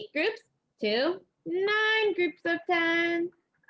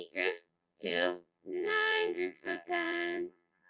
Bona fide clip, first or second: first